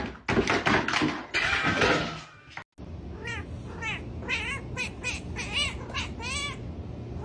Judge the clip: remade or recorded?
recorded